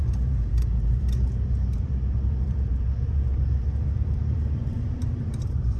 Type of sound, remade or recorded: remade